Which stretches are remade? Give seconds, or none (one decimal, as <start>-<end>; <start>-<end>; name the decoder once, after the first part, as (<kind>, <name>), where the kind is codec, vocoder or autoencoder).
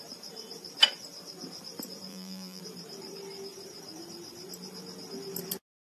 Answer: 2.1-2.6 (vocoder, BigVGAN v2)